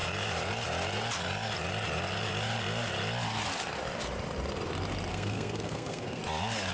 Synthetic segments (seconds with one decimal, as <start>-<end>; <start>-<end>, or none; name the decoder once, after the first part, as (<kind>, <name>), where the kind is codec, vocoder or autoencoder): 5.1-6.2 (codec, SNAC)